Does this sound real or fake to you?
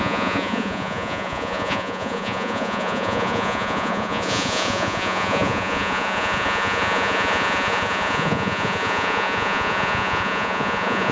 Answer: fake